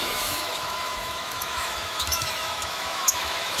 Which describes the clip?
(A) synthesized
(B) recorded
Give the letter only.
A